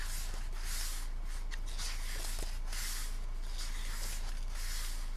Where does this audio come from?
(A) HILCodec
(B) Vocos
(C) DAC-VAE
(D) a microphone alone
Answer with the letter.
D